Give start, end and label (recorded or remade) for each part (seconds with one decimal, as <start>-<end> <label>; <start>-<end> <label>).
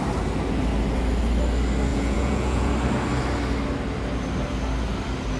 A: 0.0-1.9 recorded; 1.9-2.7 remade; 2.7-5.4 recorded